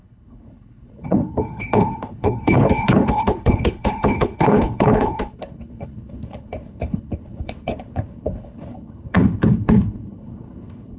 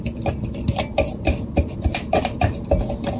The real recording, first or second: second